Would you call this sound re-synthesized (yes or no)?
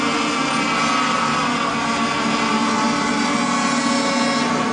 no